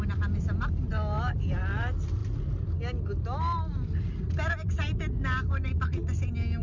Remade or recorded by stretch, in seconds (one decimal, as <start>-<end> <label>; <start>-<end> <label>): 0.0-6.6 recorded